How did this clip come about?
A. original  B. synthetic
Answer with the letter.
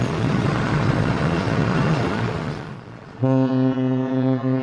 B